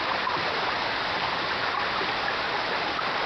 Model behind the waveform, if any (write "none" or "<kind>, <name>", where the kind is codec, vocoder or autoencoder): none